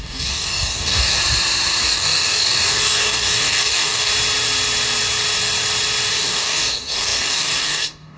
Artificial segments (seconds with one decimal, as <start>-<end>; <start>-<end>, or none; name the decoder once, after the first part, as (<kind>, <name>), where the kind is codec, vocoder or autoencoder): 0.0-1.2 (codec, DAC); 1.8-4.1; 6.1-8.2